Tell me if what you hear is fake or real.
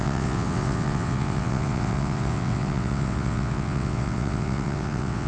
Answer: fake